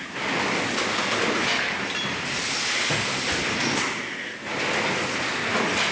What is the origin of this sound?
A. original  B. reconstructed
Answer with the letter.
A